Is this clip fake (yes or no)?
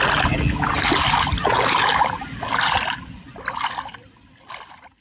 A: no